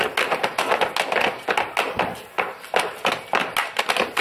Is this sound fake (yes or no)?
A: no